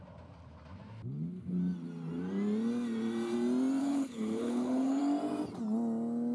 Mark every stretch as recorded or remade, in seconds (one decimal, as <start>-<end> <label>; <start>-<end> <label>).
0.0-3.8 recorded; 3.8-5.0 remade; 5.0-6.3 recorded